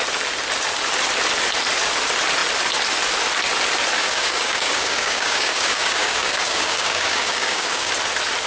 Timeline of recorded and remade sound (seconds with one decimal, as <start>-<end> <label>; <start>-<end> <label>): 0.0-4.0 recorded; 4.0-7.9 remade; 7.9-8.5 recorded